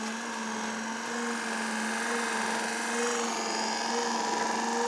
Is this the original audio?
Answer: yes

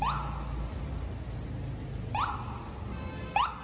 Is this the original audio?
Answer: yes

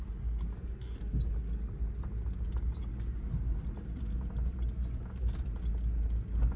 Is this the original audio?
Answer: yes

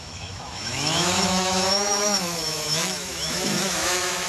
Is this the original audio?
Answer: no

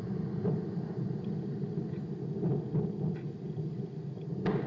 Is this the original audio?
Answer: yes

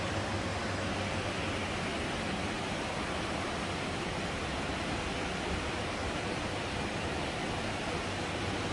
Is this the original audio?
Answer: yes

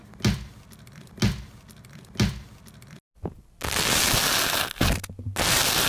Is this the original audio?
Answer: yes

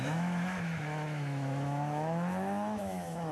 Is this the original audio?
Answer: no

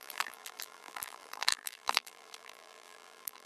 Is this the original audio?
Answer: no